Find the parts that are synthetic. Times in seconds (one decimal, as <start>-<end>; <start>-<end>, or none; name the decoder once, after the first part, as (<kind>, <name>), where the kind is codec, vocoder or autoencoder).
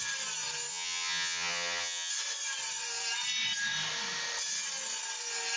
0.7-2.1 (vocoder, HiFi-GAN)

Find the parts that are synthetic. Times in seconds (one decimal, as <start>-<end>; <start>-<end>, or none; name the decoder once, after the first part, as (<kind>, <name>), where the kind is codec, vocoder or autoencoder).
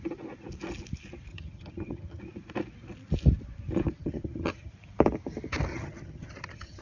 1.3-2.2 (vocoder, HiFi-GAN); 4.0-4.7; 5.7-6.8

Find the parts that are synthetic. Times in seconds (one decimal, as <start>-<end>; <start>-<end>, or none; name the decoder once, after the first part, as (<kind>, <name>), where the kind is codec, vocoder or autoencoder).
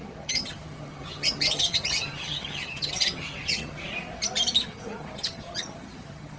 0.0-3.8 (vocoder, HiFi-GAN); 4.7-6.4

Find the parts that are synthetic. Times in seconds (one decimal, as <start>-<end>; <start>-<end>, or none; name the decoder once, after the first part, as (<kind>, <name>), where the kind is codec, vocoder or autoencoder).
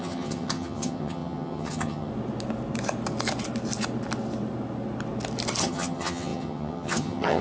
0.0-2.1 (vocoder, HiFi-GAN); 5.6-7.4